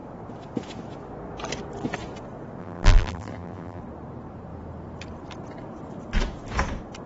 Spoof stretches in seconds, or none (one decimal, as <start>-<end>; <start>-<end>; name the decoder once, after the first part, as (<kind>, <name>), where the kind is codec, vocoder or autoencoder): 2.6-3.8 (vocoder, BigVGAN v2)